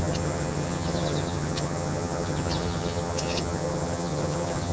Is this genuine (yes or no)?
no